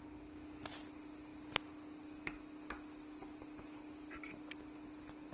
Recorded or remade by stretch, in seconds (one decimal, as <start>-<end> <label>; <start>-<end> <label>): 0.0-5.3 recorded